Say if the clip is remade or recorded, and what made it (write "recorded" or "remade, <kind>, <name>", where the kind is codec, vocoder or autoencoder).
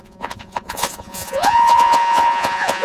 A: remade, vocoder, Vocos